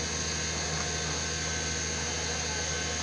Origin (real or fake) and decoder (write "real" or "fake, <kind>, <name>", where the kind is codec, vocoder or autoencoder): real